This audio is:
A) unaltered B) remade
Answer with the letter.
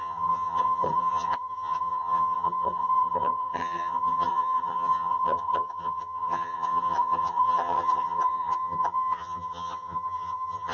B